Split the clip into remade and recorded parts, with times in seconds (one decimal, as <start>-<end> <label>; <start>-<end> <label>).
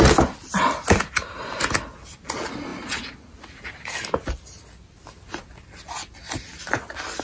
0.0-7.2 recorded